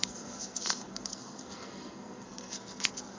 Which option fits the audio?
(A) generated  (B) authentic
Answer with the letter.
A